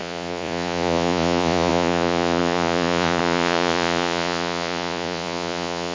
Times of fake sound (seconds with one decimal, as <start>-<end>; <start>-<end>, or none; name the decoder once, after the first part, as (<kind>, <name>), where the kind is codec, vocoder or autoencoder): 0.0-5.9 (vocoder, Vocos)